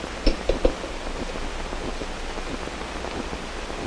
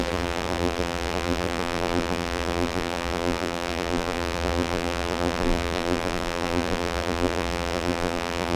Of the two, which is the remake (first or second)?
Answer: second